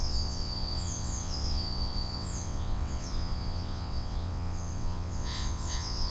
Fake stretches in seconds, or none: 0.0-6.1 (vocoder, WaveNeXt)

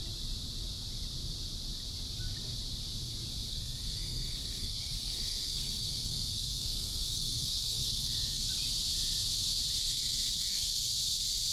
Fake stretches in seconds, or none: 3.5-8.5 (codec, SNAC); 9.8-10.9

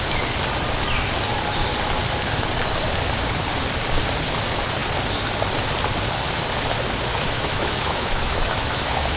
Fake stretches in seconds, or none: 7.1-9.2 (autoencoder, DAC-VAE)

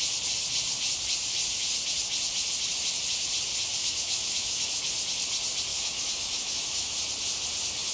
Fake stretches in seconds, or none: 3.8-4.8 (autoencoder, DAC-VAE); 5.7-6.9

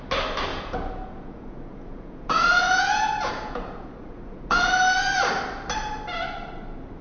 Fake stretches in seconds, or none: 0.5-4.7 (vocoder, Vocos)

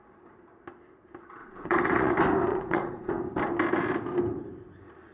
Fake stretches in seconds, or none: 1.4-2.1 (vocoder, Vocos); 2.5-3.1

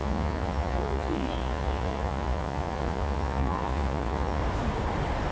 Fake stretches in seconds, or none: 0.0-4.4 (vocoder, Vocos)